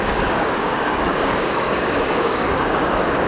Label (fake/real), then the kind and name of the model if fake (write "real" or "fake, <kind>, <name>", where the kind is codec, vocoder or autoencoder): fake, codec, DAC